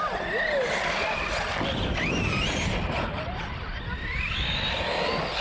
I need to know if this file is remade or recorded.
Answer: recorded